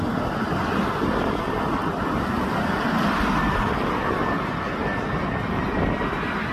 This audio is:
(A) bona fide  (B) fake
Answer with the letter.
A